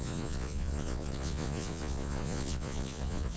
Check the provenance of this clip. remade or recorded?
remade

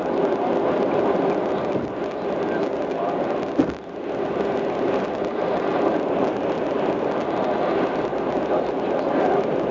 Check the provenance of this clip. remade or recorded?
recorded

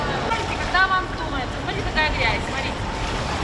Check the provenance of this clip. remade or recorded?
recorded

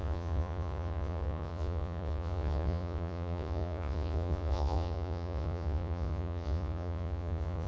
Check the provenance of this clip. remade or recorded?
remade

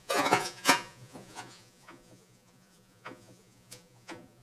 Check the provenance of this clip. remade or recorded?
remade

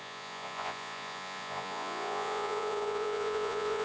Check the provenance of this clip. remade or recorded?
remade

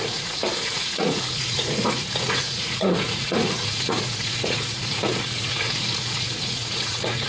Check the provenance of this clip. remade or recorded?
remade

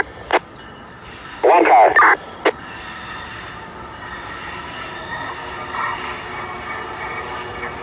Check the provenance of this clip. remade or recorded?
recorded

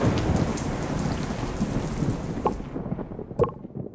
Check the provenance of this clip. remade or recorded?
recorded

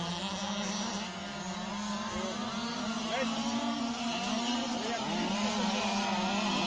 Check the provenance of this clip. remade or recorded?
recorded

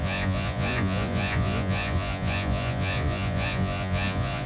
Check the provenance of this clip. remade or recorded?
remade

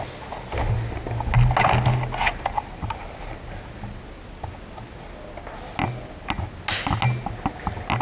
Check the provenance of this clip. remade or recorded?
recorded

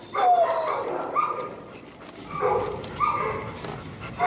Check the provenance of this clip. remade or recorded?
recorded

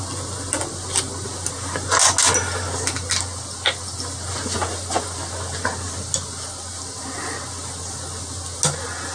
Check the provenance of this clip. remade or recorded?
recorded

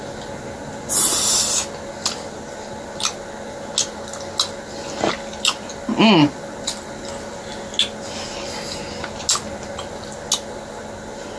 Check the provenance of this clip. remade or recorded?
recorded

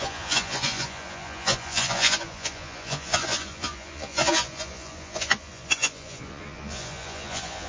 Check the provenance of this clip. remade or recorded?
remade